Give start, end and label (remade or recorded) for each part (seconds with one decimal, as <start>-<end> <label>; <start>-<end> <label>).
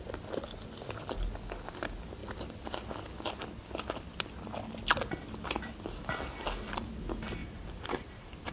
0.0-7.4 recorded; 7.4-8.5 remade